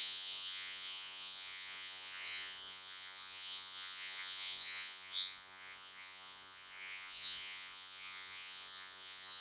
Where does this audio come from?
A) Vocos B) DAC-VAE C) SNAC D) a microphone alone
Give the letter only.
A